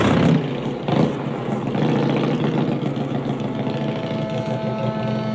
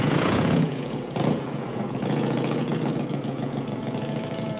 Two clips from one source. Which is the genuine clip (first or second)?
first